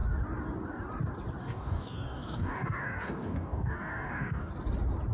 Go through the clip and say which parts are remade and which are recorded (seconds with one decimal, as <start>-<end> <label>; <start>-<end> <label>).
0.0-1.4 recorded; 1.4-4.5 remade; 4.5-5.1 recorded